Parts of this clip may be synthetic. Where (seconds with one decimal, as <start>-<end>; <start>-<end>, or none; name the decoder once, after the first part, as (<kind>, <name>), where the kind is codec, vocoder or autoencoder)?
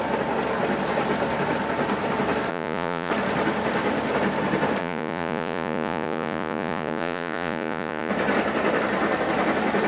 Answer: 2.5-3.1 (vocoder, Vocos); 4.8-8.1